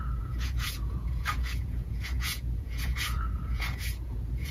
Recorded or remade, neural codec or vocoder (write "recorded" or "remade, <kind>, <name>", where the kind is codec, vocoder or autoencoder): remade, vocoder, Vocos